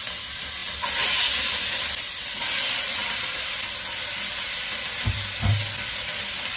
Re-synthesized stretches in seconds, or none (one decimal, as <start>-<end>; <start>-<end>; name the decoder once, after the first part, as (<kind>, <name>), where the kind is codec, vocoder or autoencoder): none